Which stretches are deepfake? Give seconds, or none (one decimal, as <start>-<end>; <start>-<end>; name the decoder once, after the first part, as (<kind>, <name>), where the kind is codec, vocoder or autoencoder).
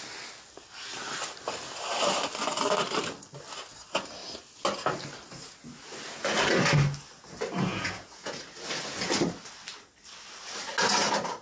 7.7-8.4 (vocoder, Vocos)